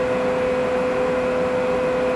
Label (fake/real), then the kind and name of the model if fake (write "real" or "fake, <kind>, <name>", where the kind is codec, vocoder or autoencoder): real